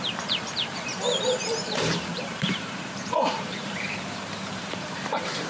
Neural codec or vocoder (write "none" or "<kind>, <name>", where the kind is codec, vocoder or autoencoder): vocoder, BigVGAN v2